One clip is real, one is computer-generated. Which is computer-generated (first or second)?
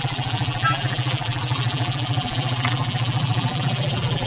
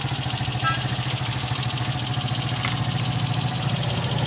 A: first